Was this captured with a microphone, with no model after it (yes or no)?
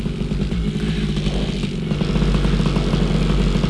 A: yes